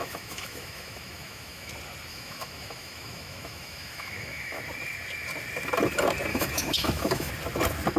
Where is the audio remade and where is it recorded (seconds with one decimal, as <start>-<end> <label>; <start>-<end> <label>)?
0.0-1.7 remade; 1.7-2.1 recorded; 2.1-4.6 remade; 4.6-6.3 recorded; 6.3-7.3 remade; 7.3-8.0 recorded